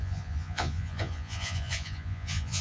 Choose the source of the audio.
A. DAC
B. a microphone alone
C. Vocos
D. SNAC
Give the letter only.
C